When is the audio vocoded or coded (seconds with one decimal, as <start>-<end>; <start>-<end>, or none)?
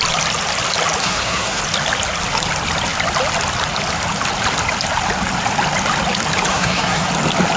1.0-1.6; 6.5-7.1